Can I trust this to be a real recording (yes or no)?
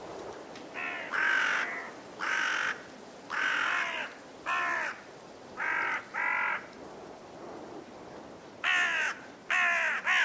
yes